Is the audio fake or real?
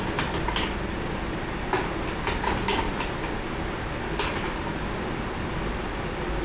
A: real